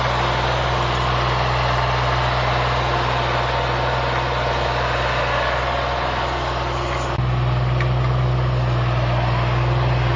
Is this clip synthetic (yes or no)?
no